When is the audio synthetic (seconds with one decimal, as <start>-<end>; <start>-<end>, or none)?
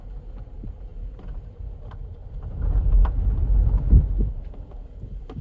none